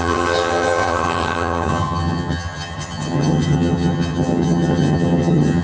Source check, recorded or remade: remade